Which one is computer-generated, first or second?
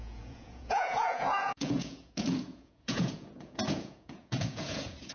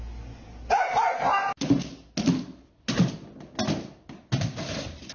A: first